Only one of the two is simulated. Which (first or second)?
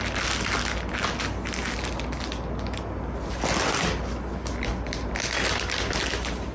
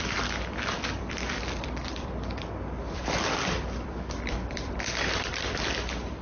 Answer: second